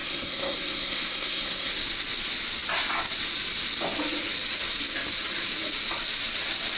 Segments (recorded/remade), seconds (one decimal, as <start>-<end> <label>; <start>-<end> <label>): 0.0-1.7 remade; 1.7-6.8 recorded